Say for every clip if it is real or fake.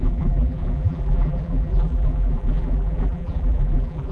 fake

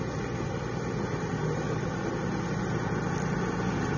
real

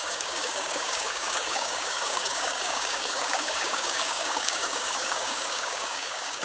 fake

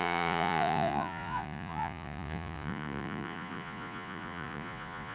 fake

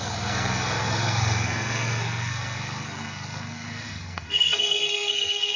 fake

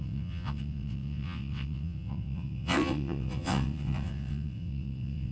fake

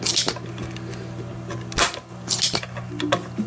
real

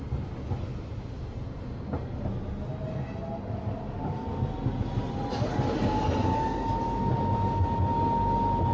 real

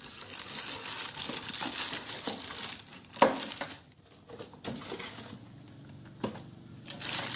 real